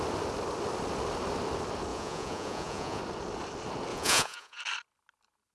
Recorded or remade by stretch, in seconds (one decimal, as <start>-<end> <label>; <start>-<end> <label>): 0.0-1.9 recorded; 1.9-3.0 remade; 3.0-3.9 recorded; 3.9-4.6 remade; 4.6-5.5 recorded